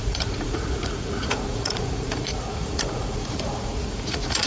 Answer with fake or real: fake